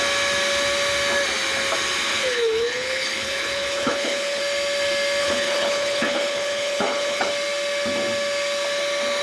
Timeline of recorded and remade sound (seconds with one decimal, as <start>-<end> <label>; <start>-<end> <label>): 0.0-2.1 recorded; 2.1-4.4 remade; 4.4-5.2 recorded; 5.2-7.3 remade; 7.3-9.2 recorded